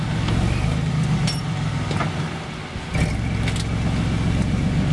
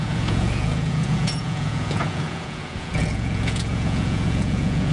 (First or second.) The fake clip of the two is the second